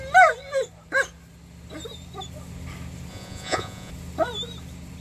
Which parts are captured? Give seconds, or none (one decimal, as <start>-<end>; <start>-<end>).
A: 0.0-3.1; 3.9-5.0